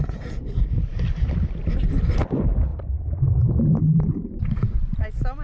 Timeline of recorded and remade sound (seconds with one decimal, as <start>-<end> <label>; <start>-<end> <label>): 0.0-0.9 recorded; 0.9-1.5 remade; 1.5-2.7 recorded; 2.7-5.0 remade; 5.0-5.4 recorded